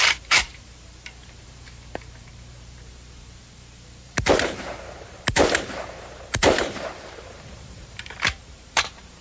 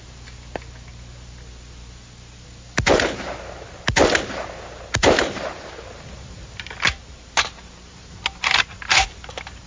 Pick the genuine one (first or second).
second